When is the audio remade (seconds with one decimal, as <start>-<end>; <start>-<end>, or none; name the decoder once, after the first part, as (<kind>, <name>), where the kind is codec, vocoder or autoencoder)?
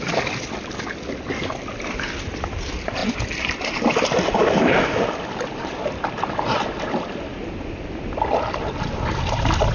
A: none